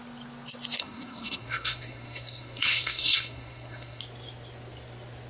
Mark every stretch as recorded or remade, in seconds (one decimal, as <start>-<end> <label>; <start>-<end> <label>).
0.0-0.8 recorded; 0.8-4.0 remade; 4.0-5.3 recorded